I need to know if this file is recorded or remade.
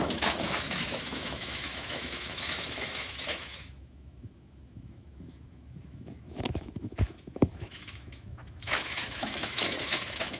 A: remade